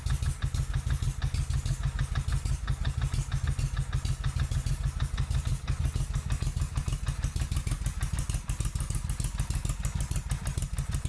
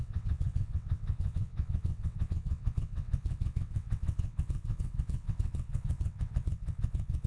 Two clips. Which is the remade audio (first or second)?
second